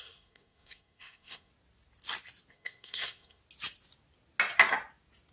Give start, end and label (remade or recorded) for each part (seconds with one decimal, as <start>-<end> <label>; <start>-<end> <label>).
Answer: 0.0-1.5 remade; 1.5-2.5 recorded; 2.5-3.4 remade; 3.4-5.3 recorded